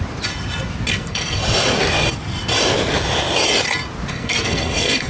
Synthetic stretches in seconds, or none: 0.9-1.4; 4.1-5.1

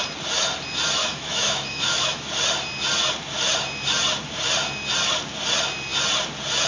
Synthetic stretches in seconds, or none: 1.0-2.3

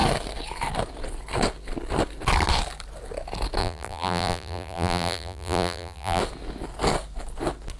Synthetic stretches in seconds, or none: 3.6-6.2

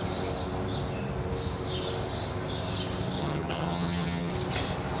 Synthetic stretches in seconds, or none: 3.2-4.3

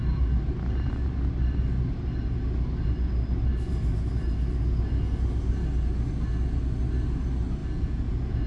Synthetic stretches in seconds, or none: 7.6-8.5

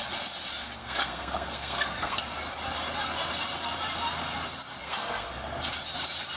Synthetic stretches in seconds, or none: 0.8-2.2; 4.8-5.3

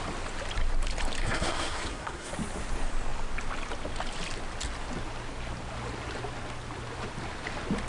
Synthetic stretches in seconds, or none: 1.2-2.3